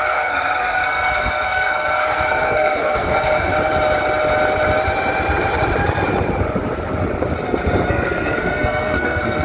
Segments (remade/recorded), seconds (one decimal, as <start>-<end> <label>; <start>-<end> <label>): 0.0-3.5 remade; 3.5-7.9 recorded; 7.9-9.4 remade